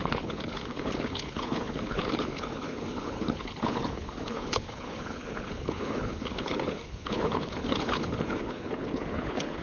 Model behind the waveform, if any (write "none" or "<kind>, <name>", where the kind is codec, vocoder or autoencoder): codec, HILCodec